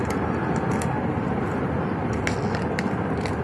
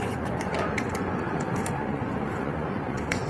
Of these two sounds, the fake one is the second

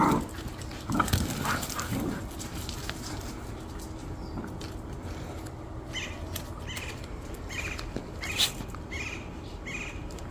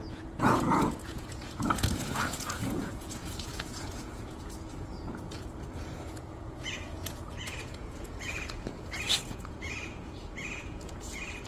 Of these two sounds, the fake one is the second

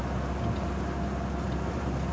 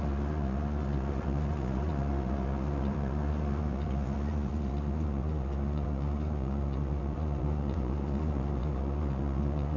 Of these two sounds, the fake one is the second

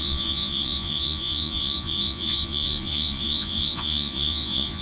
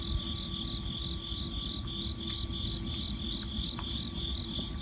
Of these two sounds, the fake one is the first